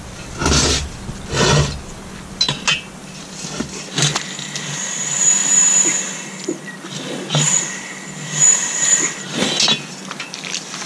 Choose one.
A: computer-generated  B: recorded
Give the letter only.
B